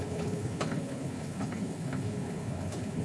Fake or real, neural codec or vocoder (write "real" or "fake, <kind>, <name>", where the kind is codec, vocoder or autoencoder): fake, codec, HILCodec